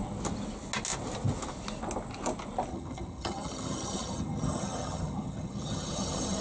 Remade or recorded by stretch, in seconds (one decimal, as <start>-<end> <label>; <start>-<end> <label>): 0.0-2.7 recorded; 2.7-6.4 remade